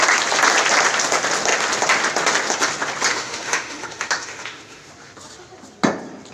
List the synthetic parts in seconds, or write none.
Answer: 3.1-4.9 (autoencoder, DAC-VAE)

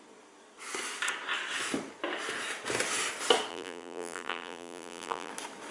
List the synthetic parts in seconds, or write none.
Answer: 3.5-5.3 (vocoder, BigVGAN v2)

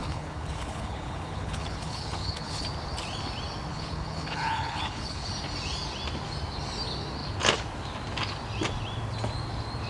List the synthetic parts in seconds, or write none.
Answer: 0.0-2.7 (codec, HILCodec); 3.7-5.3

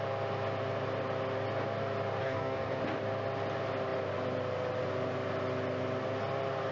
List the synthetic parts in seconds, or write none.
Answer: 2.2-2.8 (codec, DAC)

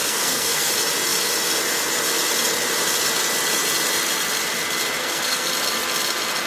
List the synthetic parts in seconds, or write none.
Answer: 0.0-0.7 (codec, SNAC); 5.0-5.5

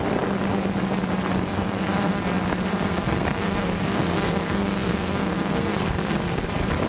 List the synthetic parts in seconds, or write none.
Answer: 1.5-2.2 (codec, SNAC); 2.7-6.5

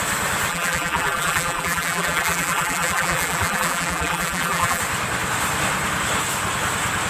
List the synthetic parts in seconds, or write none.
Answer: 0.5-4.8 (vocoder, BigVGAN v2)